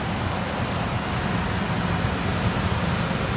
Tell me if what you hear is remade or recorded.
recorded